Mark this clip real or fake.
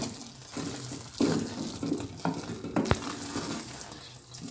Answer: real